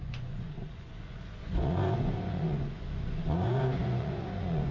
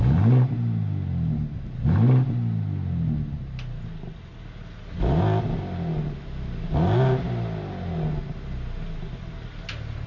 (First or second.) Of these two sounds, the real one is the second